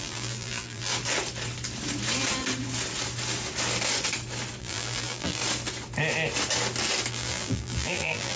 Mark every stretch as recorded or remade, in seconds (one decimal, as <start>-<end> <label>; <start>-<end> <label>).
0.0-0.9 remade; 0.9-4.6 recorded; 4.6-5.4 remade; 5.4-7.1 recorded; 7.1-8.4 remade